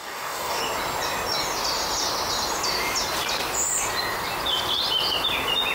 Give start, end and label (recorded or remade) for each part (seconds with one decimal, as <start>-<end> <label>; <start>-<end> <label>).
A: 0.0-0.6 remade; 0.6-5.7 recorded